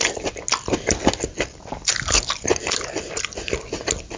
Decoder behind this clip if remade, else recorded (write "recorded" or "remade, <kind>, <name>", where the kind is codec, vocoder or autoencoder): recorded